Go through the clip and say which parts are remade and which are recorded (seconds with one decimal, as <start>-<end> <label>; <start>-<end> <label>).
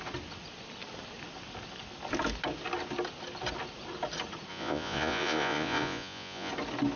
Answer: 0.0-4.5 recorded; 4.5-6.5 remade; 6.5-7.0 recorded